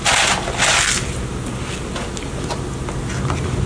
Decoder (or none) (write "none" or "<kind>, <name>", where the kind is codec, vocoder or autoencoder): none